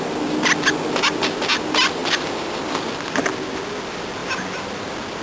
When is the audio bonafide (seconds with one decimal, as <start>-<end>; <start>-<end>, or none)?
0.0-5.2